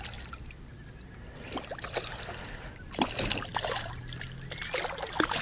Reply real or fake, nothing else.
real